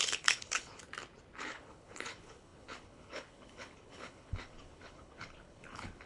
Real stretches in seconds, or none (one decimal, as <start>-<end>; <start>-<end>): 0.8-1.4